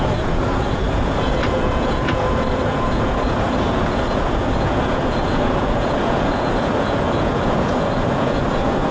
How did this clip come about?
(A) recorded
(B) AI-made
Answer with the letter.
B